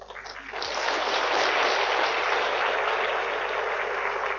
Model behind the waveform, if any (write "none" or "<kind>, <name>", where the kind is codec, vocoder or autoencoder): none